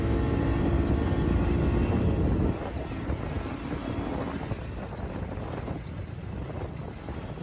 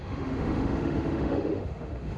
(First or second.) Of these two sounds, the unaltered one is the first